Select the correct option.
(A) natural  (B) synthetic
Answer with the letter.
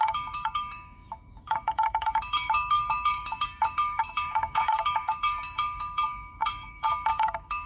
B